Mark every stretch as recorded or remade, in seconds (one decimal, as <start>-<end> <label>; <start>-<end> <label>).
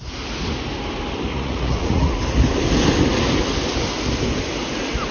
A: 0.0-1.3 recorded; 1.3-2.1 remade; 2.1-5.1 recorded